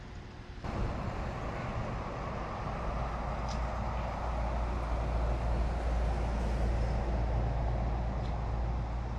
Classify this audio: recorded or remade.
recorded